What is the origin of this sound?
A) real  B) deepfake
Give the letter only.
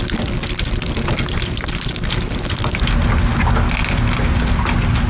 A